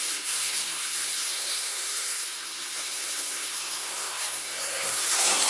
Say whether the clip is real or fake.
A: fake